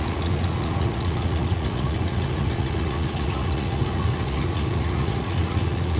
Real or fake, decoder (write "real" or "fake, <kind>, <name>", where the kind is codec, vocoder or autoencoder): fake, vocoder, Vocos